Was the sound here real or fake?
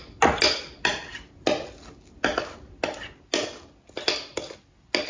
real